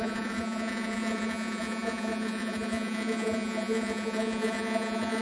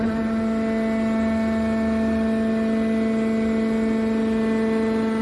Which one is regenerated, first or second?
first